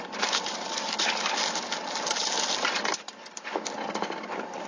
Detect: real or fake real